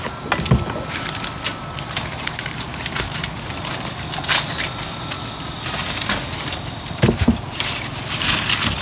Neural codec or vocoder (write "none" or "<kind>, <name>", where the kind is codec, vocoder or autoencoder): none